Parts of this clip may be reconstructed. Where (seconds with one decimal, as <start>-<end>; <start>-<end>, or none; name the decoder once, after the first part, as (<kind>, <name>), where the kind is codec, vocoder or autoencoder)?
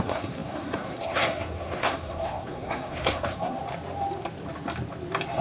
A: 0.0-3.6 (codec, SNAC)